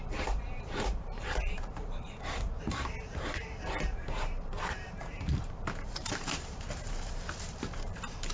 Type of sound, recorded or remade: remade